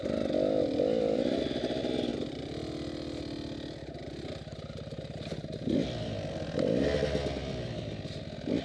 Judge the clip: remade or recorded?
recorded